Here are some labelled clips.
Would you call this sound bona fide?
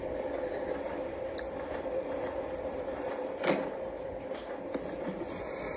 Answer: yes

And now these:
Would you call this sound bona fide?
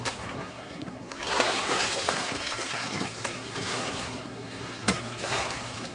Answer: no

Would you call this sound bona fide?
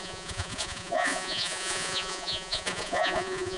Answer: no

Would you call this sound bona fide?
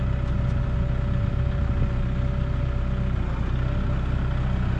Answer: yes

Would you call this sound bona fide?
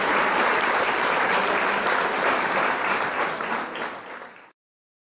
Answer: no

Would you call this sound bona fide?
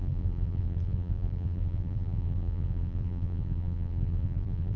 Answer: no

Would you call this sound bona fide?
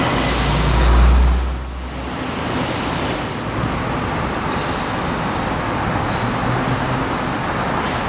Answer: yes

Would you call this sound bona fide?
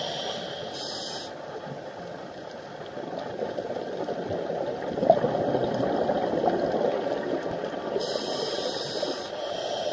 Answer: yes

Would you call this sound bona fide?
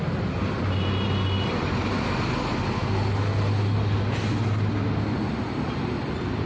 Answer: yes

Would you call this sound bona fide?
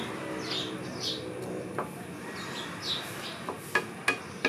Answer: yes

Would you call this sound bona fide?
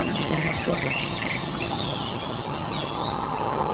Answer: no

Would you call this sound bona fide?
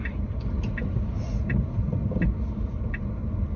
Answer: yes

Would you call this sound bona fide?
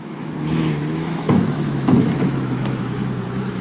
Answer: no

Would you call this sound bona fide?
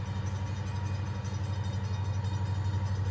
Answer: yes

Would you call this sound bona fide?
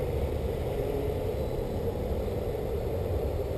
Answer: yes